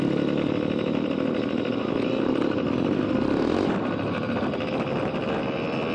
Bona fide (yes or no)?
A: yes